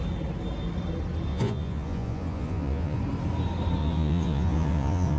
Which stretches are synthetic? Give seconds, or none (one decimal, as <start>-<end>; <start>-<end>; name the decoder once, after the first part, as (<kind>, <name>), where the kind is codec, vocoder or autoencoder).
1.3-3.0 (vocoder, Vocos); 3.8-5.2